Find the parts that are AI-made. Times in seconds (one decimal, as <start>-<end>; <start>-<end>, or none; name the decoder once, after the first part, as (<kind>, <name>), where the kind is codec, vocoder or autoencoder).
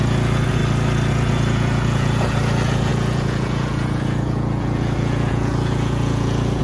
0.0-0.6 (vocoder, Vocos); 1.1-6.6